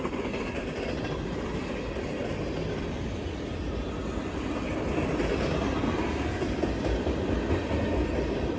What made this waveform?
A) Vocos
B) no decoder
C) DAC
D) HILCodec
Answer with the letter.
B